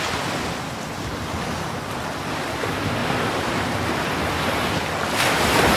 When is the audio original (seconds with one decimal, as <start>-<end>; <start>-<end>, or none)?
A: 0.0-3.0; 4.3-5.8